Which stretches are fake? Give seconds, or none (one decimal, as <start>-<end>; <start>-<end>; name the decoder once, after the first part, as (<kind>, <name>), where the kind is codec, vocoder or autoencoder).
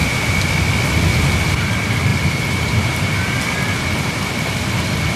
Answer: 2.1-3.4 (vocoder, BigVGAN v2)